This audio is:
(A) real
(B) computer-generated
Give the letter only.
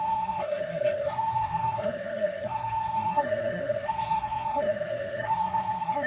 B